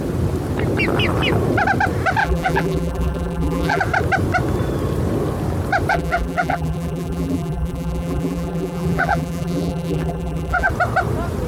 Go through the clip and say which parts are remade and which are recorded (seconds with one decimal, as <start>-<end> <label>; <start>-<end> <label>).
0.0-2.2 recorded; 2.2-3.8 remade; 3.8-5.9 recorded; 5.9-10.7 remade; 10.7-11.5 recorded